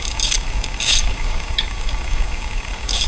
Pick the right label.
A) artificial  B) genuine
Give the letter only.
A